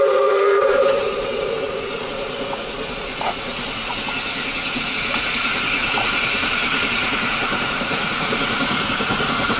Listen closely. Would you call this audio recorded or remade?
remade